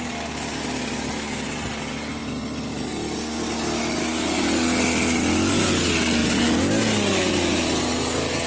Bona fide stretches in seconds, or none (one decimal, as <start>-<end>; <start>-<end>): 0.0-8.5